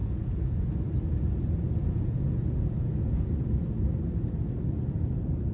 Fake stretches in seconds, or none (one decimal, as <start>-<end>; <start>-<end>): 0.0-0.7; 1.8-3.3